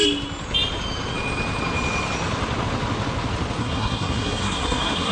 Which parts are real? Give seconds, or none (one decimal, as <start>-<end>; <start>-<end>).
0.0-3.6